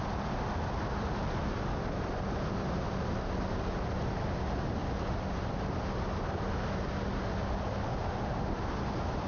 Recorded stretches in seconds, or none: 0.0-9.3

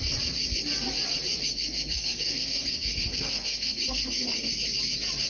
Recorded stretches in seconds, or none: 0.0-1.4; 4.5-5.3

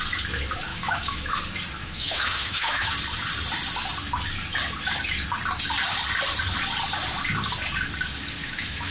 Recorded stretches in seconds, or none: 0.0-0.7; 1.3-1.8; 2.9-8.4

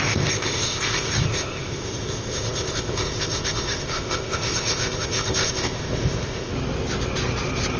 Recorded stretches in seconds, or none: 6.5-7.8

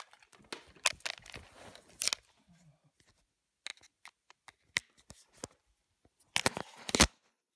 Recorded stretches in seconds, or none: 0.0-7.6

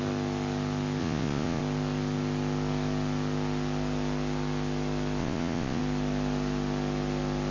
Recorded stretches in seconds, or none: 0.0-1.0; 1.6-5.2; 5.8-7.5